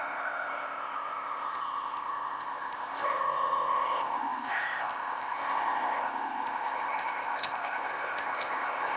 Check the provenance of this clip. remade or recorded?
remade